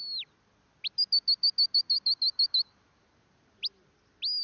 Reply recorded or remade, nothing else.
recorded